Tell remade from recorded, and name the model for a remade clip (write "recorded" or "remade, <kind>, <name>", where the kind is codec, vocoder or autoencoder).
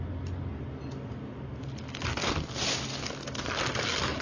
recorded